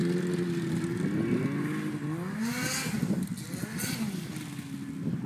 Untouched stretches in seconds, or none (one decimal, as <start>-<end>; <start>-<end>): 0.0-5.3